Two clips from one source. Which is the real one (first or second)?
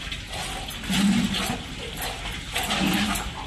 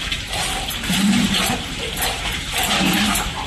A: first